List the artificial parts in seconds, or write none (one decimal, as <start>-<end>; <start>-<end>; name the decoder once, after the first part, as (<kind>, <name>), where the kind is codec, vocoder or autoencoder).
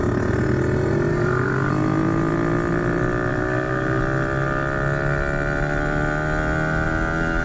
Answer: 1.1-1.7 (codec, DAC); 3.3-4.0